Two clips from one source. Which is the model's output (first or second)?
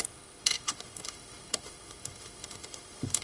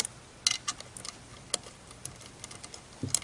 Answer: first